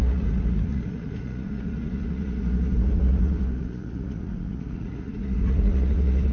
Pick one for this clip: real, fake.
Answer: fake